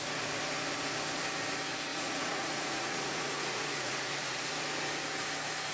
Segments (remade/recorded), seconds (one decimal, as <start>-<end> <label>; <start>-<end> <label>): 0.0-1.9 recorded; 1.9-4.5 remade; 4.5-5.7 recorded